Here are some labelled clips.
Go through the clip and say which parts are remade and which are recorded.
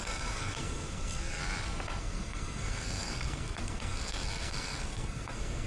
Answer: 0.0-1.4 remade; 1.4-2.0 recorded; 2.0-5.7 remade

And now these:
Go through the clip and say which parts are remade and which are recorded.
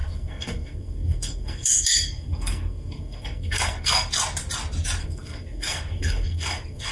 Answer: 0.0-4.1 remade; 4.1-5.0 recorded; 5.0-6.9 remade